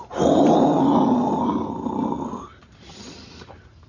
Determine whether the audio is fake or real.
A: real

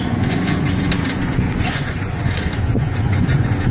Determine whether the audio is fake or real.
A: fake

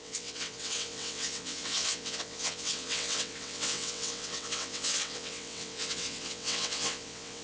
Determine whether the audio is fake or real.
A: fake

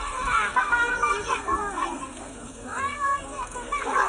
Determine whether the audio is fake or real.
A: fake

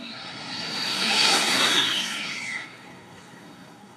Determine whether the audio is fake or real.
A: fake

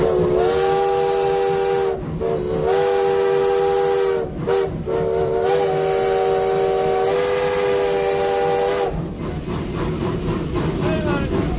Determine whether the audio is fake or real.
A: real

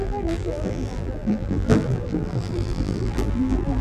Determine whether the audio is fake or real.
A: fake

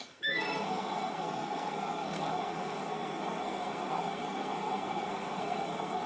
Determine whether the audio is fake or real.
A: fake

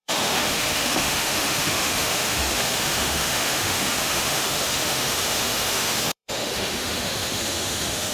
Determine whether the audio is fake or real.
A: fake